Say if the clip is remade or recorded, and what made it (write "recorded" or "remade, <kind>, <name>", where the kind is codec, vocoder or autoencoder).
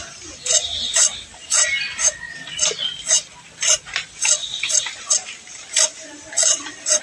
recorded